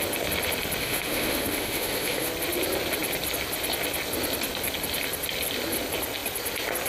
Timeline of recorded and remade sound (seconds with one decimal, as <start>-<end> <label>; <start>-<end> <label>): 0.0-0.8 recorded; 0.8-2.3 remade; 2.3-6.9 recorded